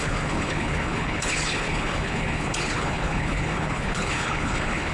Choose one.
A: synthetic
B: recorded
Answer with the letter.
A